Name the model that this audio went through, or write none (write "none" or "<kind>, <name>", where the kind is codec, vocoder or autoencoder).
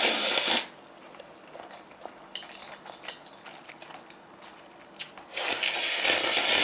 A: none